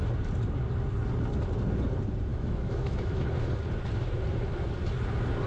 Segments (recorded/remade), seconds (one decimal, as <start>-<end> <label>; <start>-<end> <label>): 0.0-2.3 recorded; 2.3-3.3 remade; 3.3-5.5 recorded

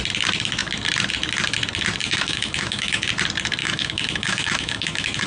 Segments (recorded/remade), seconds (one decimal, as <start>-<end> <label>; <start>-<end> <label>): 0.0-2.0 recorded; 2.0-3.0 remade; 3.0-3.6 recorded; 3.6-5.3 remade

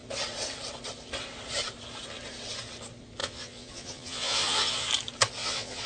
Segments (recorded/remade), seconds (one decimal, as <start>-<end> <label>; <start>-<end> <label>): 0.0-3.2 recorded; 3.2-4.9 remade; 4.9-5.4 recorded; 5.4-5.9 remade

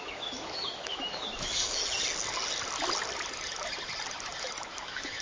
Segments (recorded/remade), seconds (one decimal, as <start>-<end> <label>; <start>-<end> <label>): 0.0-1.8 remade; 1.8-4.4 recorded; 4.4-5.2 remade